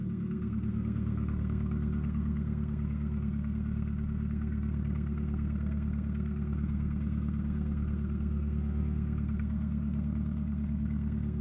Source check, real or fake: fake